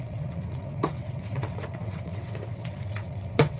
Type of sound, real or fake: fake